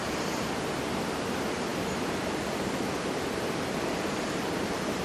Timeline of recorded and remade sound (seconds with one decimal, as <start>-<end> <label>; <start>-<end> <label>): 0.0-1.2 remade; 1.2-5.0 recorded